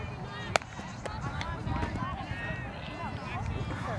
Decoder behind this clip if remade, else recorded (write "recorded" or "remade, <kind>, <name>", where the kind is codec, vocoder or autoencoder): recorded